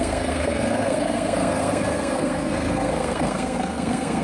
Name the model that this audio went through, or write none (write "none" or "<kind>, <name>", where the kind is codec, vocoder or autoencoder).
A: codec, SNAC